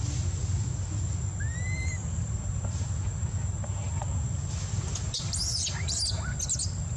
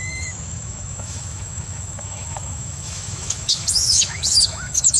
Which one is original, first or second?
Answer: first